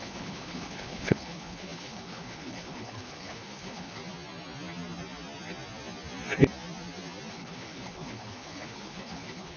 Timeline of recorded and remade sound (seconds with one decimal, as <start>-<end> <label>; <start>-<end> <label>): 0.0-4.0 remade; 4.0-7.3 recorded; 7.3-9.6 remade